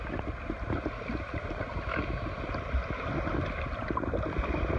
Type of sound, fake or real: real